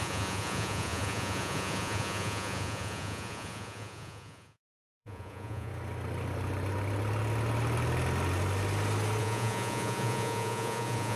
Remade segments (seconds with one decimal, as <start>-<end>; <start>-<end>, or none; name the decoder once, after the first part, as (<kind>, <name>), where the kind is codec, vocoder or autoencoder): 0.0-5.7 (vocoder, Vocos); 9.2-11.2